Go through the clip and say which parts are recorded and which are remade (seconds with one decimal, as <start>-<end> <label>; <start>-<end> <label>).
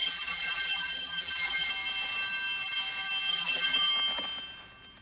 0.0-1.7 remade; 1.7-3.3 recorded; 3.3-3.9 remade; 3.9-5.0 recorded